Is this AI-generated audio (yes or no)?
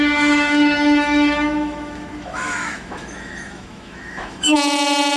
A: yes